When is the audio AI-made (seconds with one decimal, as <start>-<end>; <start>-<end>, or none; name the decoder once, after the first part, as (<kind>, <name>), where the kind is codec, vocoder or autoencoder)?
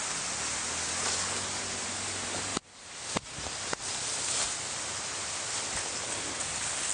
0.9-1.6 (codec, DAC)